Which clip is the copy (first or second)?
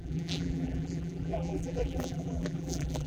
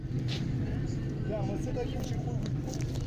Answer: first